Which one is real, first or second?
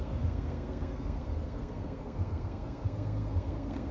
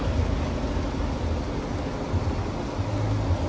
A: second